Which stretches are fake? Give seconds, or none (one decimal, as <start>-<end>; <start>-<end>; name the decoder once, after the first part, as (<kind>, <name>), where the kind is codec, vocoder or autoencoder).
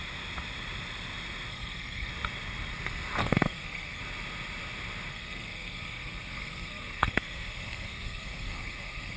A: 1.5-2.1 (codec, SNAC); 3.2-4.0; 5.1-9.2